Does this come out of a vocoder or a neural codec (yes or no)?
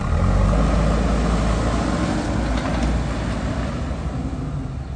no